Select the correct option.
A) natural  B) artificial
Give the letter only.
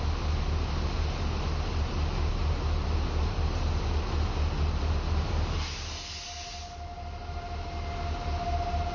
A